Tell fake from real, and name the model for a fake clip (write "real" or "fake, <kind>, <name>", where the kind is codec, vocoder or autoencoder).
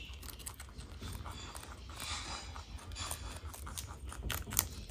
real